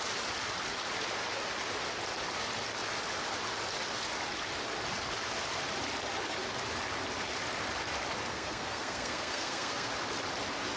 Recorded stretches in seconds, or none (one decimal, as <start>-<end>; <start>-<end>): 0.0-8.3; 9.9-10.8